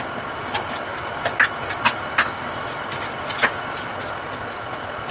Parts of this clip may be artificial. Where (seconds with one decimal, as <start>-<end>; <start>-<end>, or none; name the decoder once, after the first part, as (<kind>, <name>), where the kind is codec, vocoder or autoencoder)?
none